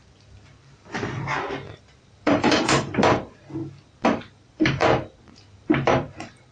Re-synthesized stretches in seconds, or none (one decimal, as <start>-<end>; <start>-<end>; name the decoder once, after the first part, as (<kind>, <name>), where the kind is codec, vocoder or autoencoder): 0.0-4.8 (vocoder, BigVGAN v2); 5.4-6.5